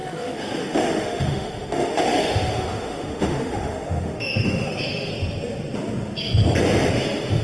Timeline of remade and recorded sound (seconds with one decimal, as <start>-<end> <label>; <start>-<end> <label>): 0.0-5.1 remade; 5.1-6.9 recorded; 6.9-7.4 remade